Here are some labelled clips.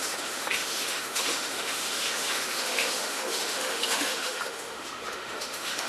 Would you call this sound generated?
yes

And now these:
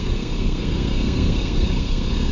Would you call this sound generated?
yes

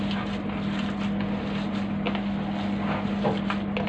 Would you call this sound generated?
no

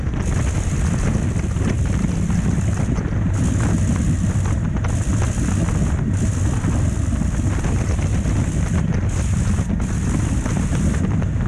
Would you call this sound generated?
no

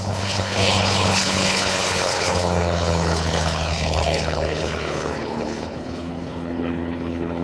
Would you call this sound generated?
yes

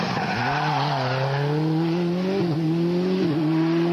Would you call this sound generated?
no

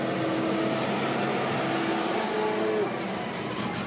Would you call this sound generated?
no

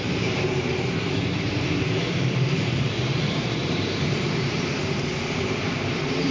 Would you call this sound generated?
yes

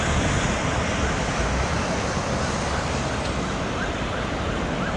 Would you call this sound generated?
no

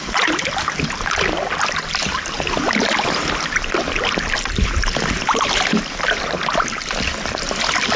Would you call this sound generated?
no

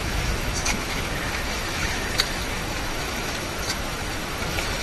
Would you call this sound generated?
yes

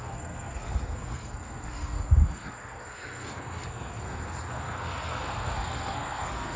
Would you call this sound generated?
yes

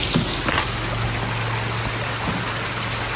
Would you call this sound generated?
no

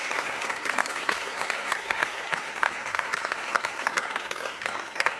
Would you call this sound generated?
yes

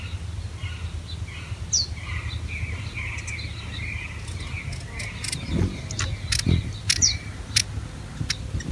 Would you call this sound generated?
no